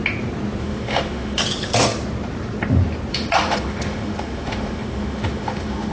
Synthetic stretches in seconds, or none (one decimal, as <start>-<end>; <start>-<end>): 0.6-1.4; 3.1-5.9